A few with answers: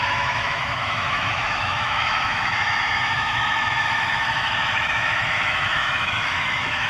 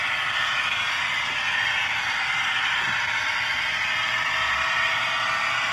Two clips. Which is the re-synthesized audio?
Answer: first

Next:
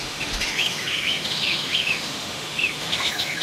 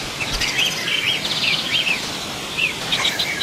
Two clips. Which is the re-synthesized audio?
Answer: first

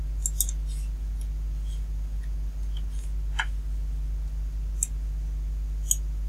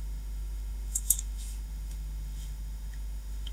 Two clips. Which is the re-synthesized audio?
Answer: second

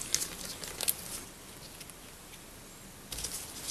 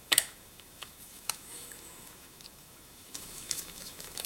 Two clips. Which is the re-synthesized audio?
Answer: second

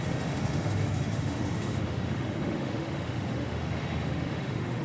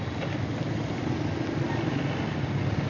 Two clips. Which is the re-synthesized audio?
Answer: first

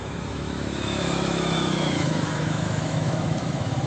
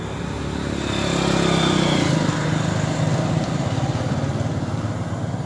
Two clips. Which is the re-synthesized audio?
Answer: first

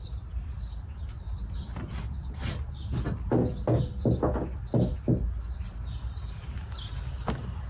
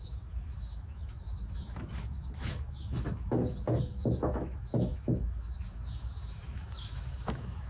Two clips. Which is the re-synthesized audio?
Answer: second